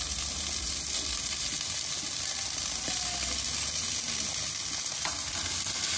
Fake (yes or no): no